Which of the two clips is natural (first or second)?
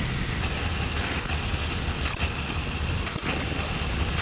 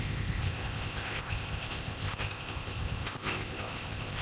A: first